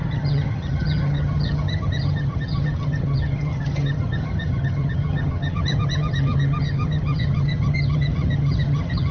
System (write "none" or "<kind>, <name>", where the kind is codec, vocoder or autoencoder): vocoder, HiFi-GAN